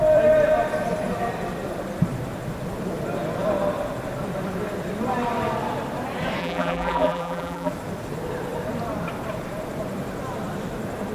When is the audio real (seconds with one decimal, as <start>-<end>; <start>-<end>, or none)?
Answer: 0.0-6.4; 7.7-11.1